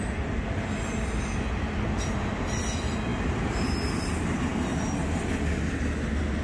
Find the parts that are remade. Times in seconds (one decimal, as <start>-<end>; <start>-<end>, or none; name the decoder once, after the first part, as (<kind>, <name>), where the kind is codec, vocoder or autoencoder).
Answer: none